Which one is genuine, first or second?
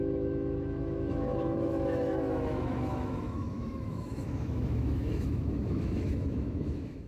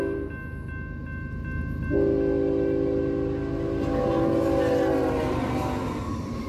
second